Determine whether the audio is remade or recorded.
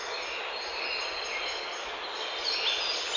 recorded